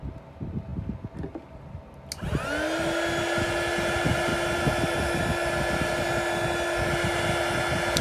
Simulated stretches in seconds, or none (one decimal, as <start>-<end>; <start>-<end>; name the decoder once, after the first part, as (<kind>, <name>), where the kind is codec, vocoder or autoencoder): 4.3-5.2 (vocoder, BigVGAN v2)